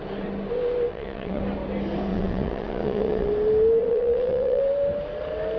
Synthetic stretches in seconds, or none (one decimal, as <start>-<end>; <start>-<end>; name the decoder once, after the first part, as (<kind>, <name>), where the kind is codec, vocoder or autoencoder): 0.9-1.4 (vocoder, WaveNeXt); 2.1-3.3; 3.8-4.6